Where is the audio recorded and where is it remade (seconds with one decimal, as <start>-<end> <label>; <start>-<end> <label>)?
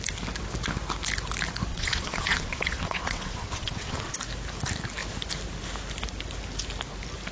0.0-1.7 recorded; 1.7-4.1 remade; 4.1-7.3 recorded